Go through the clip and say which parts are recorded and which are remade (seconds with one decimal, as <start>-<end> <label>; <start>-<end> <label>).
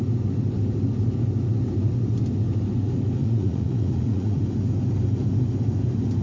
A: 0.0-3.2 recorded; 3.2-4.4 remade; 4.4-6.2 recorded